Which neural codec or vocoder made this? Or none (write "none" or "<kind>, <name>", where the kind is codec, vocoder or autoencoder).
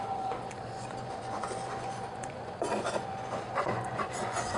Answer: vocoder, Vocos